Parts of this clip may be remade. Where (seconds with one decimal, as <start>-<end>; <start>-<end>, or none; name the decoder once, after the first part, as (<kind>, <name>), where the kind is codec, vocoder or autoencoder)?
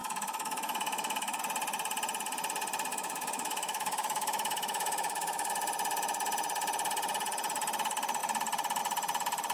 0.0-1.4 (autoencoder, DAC-VAE); 2.9-5.5